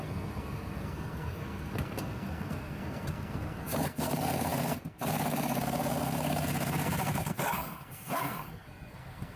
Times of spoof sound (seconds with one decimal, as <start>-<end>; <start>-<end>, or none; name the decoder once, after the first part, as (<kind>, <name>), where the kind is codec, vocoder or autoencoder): 0.0-9.4 (codec, SNAC)